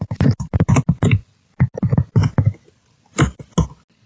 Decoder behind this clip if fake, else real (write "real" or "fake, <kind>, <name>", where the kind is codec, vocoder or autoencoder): real